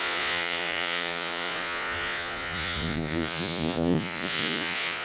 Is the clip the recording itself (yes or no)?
no